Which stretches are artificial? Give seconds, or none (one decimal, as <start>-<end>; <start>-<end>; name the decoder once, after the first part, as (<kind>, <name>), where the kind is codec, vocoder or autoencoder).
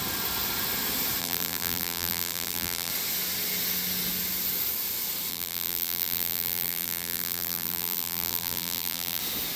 1.2-2.9 (vocoder, BigVGAN v2); 5.3-9.2